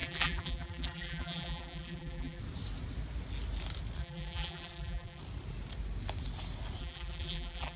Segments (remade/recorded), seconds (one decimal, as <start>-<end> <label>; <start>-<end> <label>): 0.0-2.4 remade; 2.4-4.0 recorded; 4.0-5.2 remade; 5.2-6.8 recorded; 6.8-7.8 remade